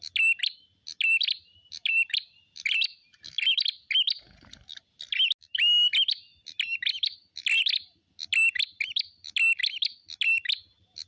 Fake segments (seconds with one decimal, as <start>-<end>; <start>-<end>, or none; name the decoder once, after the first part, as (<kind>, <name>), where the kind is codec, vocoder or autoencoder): none